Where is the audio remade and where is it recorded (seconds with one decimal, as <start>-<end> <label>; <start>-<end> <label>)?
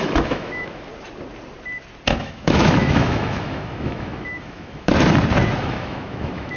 0.0-0.9 remade; 0.9-2.2 recorded; 2.2-4.9 remade; 4.9-5.6 recorded; 5.6-6.6 remade